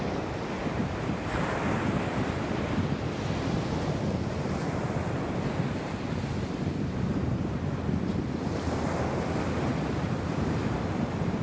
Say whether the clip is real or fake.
real